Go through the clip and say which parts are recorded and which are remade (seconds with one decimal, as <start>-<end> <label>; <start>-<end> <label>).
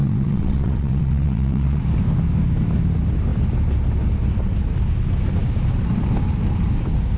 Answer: 0.0-1.8 remade; 1.8-7.2 recorded